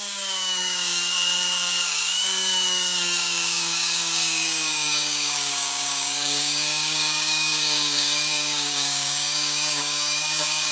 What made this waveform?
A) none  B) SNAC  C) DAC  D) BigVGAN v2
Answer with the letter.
C